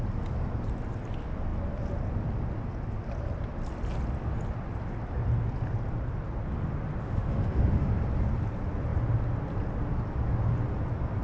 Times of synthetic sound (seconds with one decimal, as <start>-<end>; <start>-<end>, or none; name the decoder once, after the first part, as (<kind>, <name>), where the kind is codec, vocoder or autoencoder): 7.0-7.9 (autoencoder, DAC-VAE)